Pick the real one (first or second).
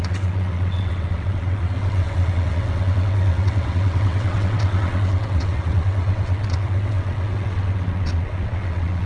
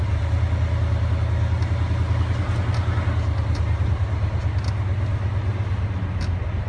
second